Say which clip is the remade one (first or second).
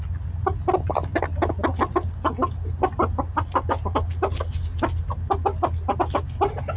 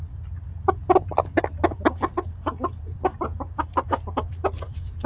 second